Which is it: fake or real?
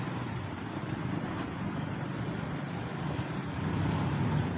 real